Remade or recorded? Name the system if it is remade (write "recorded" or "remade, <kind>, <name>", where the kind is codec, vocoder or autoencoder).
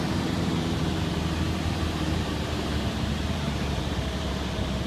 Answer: remade, vocoder, BigVGAN v2